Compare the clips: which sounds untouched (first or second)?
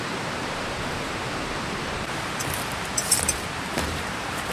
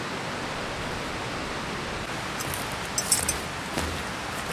second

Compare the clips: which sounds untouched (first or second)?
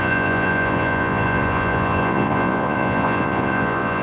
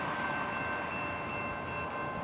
second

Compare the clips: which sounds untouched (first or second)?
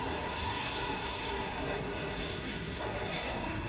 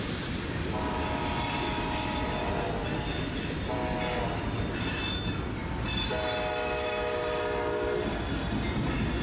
second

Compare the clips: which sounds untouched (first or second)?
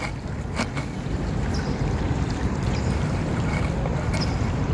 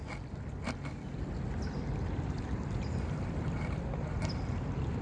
second